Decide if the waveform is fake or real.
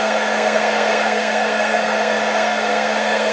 fake